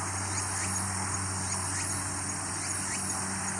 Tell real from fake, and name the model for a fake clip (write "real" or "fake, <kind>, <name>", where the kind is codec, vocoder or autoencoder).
real